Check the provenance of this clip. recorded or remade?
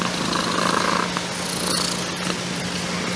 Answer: recorded